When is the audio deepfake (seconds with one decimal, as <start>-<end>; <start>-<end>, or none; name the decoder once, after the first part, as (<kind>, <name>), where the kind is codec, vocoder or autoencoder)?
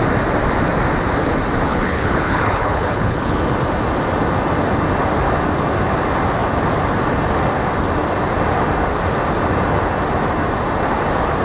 1.7-3.4 (codec, HILCodec)